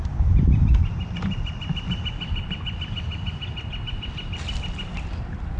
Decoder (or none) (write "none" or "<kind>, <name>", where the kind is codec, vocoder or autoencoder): none